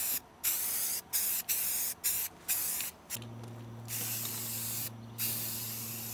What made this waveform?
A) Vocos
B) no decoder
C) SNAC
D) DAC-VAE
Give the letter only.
B